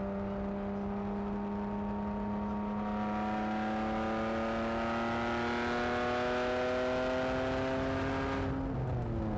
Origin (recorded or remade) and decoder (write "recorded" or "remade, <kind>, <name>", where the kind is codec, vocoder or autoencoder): recorded